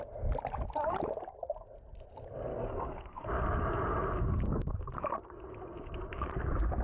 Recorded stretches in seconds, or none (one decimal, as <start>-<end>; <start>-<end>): 0.0-2.5; 3.4-6.8